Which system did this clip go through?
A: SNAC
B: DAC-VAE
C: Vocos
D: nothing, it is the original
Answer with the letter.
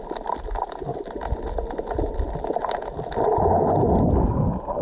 D